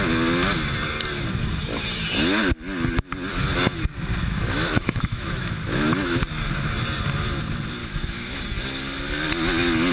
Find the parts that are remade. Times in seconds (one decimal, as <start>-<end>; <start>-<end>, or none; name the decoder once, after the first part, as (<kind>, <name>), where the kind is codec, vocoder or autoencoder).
4.2-6.2 (autoencoder, DAC-VAE); 7.8-8.4